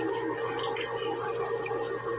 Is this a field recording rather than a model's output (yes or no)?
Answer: yes